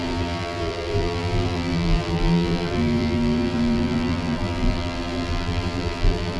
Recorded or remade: remade